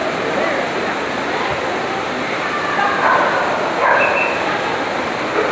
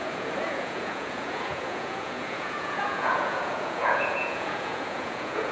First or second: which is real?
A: first